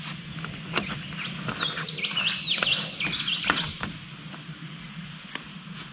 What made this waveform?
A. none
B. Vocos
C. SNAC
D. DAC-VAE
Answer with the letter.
A